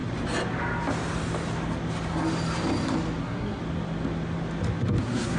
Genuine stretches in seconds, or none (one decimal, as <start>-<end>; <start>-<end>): 0.0-3.2; 3.6-5.0